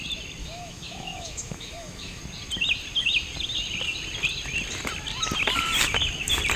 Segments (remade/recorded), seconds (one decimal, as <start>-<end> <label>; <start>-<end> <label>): 0.0-0.4 recorded; 0.4-2.2 remade; 2.2-6.6 recorded